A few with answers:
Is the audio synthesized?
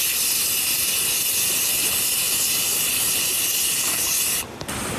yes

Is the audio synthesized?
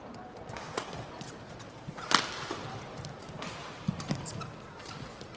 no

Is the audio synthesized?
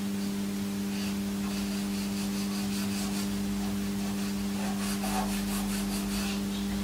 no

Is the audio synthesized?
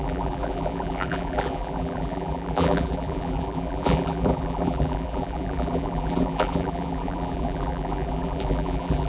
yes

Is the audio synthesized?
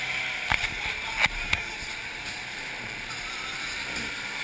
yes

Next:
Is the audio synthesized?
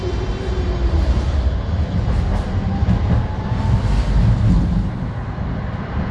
no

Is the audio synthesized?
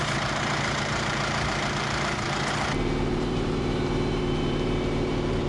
yes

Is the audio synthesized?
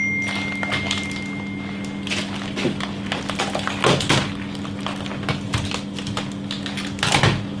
no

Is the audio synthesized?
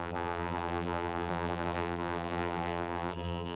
yes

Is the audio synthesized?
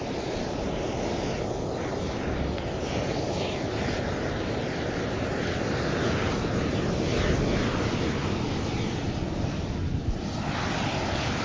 no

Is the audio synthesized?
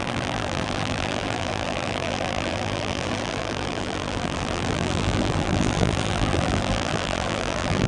yes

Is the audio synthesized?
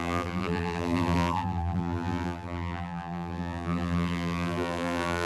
yes